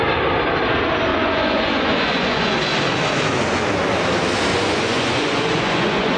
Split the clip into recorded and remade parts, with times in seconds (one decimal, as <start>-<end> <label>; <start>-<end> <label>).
0.0-1.1 recorded; 1.1-2.5 remade; 2.5-4.5 recorded; 4.5-6.2 remade